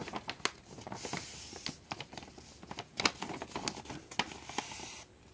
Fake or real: real